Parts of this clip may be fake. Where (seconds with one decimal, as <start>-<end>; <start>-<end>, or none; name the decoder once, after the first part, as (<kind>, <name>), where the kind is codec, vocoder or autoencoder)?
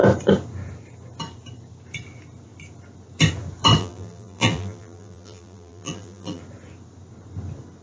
3.8-6.4 (vocoder, BigVGAN v2)